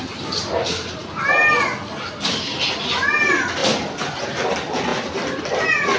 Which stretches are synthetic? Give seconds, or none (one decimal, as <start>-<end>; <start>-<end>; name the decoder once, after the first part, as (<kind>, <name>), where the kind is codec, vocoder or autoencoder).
none